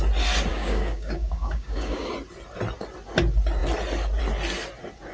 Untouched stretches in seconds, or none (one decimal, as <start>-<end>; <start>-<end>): 0.0-0.5; 2.1-5.1